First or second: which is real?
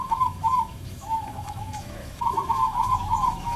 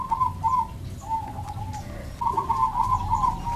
second